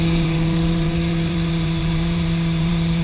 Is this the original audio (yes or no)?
no